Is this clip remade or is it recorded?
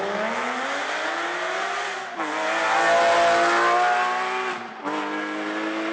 recorded